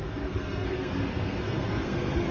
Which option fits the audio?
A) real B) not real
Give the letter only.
B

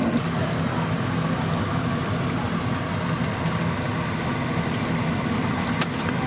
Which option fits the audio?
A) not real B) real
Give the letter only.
B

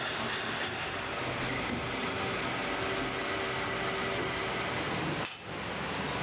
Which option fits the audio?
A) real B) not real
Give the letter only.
A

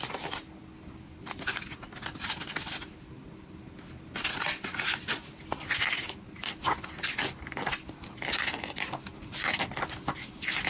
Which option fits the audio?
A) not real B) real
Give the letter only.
B